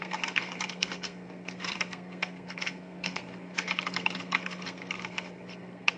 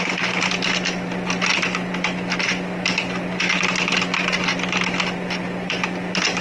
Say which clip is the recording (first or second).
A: second